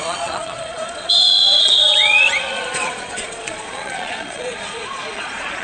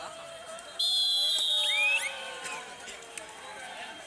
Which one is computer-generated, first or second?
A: first